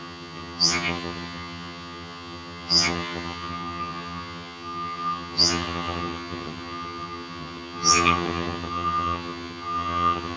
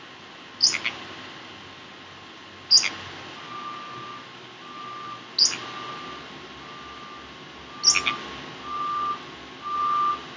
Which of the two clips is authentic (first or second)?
second